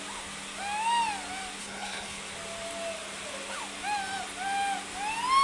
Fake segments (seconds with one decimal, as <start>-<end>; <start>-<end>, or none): 1.6-2.2